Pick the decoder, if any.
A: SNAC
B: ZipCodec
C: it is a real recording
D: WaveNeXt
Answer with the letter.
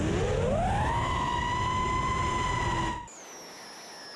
C